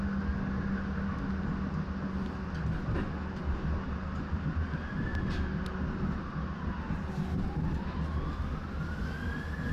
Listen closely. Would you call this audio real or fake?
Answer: real